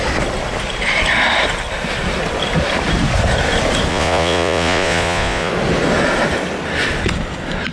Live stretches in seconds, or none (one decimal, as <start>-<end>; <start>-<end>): 0.0-3.9; 5.5-7.7